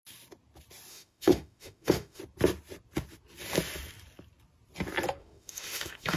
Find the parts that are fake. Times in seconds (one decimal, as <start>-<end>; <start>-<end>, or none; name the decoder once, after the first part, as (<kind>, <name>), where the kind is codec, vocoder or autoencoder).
0.9-2.2 (autoencoder, DAC-VAE); 5.2-6.2